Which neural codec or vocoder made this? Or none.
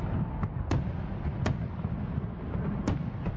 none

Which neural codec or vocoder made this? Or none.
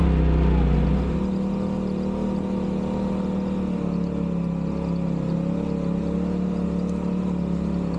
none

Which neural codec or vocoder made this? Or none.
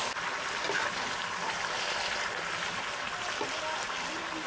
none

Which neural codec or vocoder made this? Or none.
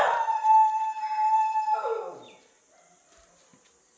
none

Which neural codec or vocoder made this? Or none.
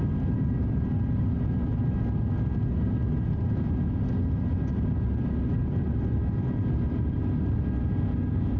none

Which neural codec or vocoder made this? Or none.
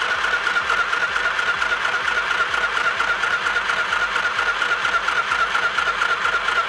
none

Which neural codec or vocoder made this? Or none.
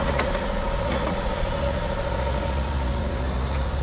vocoder, Vocos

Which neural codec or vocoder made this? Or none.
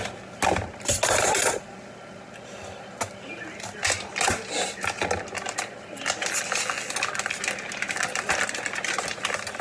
none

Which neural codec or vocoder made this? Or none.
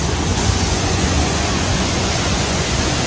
vocoder, Vocos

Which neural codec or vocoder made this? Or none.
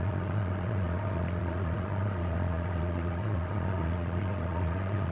vocoder, Vocos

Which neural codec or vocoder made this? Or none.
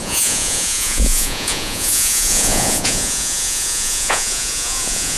vocoder, Vocos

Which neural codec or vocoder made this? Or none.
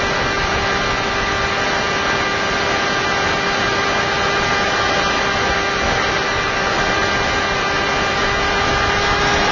none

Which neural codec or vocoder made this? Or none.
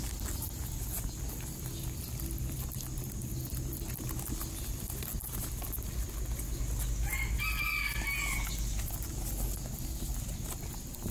none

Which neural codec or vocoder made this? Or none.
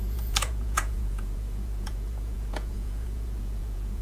vocoder, Vocos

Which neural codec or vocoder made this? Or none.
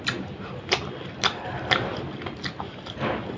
none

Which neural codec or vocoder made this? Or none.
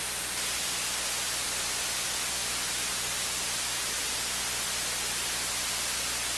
none